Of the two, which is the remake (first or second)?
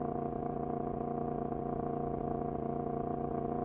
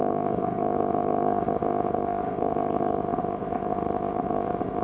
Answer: second